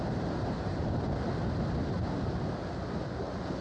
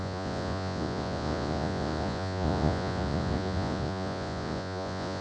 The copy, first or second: second